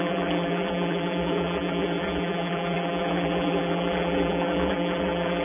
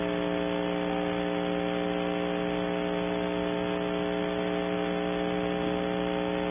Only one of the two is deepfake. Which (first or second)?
first